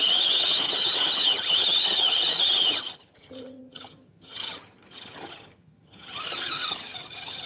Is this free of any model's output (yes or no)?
no